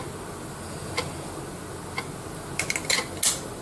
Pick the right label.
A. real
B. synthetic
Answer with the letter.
A